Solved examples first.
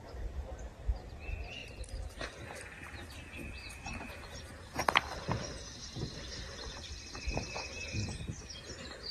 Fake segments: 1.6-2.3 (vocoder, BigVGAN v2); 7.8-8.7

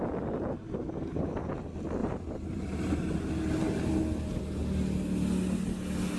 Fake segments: 0.8-1.6 (vocoder, BigVGAN v2); 2.0-3.9

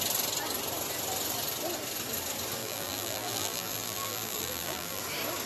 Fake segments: 2.6-5.0 (vocoder, BigVGAN v2)

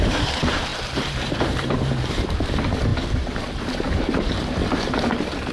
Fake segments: 0.0-4.6 (vocoder, BigVGAN v2); 5.1-5.5

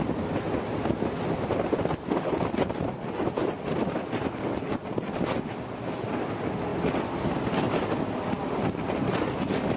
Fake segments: 6.7-8.0 (vocoder, BigVGAN v2)

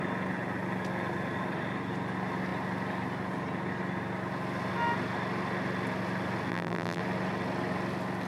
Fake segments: 6.5-7.0 (vocoder, BigVGAN v2)

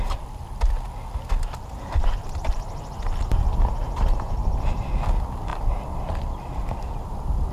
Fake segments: 5.5-7.5 (vocoder, BigVGAN v2)